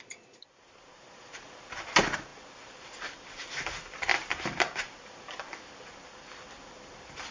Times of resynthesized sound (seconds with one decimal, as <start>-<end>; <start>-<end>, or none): 4.1-5.1